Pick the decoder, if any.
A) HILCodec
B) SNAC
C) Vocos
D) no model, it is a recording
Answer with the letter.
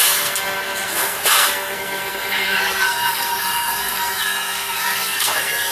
B